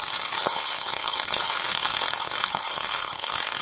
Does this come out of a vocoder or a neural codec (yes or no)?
yes